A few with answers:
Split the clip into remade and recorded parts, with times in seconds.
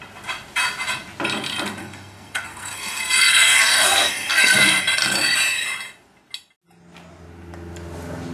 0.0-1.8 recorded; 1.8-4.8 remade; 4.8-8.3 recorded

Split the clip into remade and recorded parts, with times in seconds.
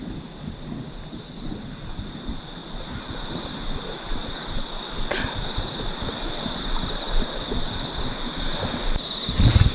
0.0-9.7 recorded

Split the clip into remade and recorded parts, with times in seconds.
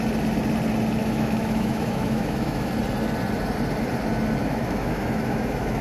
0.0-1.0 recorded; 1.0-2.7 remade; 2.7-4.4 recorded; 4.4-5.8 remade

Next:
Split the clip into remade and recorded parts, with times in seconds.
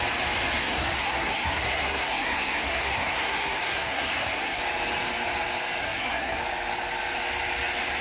0.0-0.6 recorded; 0.6-4.6 remade; 4.6-5.8 recorded; 5.8-6.4 remade; 6.4-8.0 recorded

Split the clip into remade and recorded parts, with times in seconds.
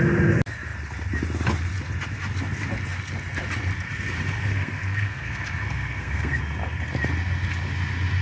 0.0-4.4 recorded; 4.4-6.4 remade; 6.4-8.2 recorded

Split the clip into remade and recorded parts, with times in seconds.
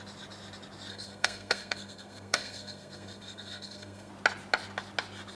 0.0-0.9 recorded; 0.9-4.1 remade; 4.1-5.3 recorded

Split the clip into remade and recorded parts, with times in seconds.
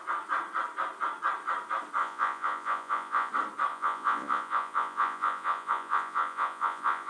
0.0-2.0 recorded; 2.0-3.3 remade; 3.3-3.7 recorded; 3.7-7.1 remade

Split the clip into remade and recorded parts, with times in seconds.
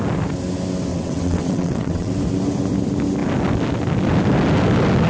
0.0-0.9 recorded; 0.9-2.1 remade; 2.1-5.1 recorded